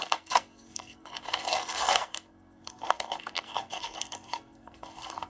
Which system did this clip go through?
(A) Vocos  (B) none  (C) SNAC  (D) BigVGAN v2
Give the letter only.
C